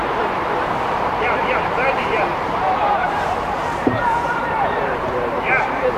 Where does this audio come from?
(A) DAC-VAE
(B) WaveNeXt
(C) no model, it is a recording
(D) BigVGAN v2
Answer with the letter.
D